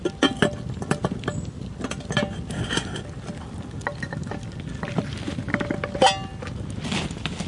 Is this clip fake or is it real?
real